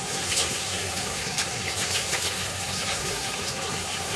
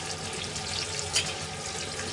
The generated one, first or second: first